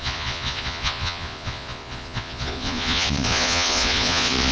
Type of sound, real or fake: fake